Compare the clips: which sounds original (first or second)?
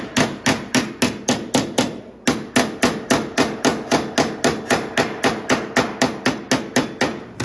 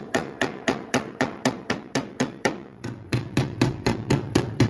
first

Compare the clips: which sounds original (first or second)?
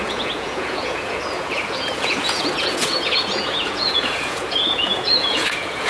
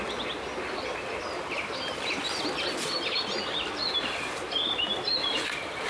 second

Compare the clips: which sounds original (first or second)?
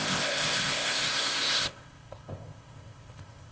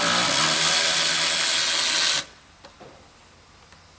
second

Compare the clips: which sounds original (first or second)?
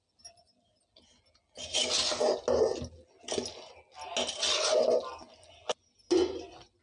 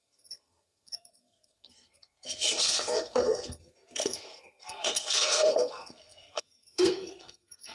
first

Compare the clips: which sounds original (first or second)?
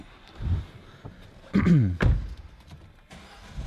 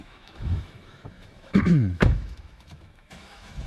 first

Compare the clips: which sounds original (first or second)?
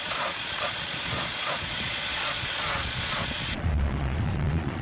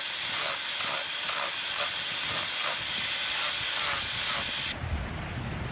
second